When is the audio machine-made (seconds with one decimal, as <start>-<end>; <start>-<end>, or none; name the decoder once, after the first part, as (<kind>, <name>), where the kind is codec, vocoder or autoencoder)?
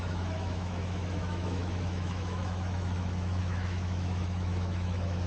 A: 0.0-5.3 (autoencoder, DAC-VAE)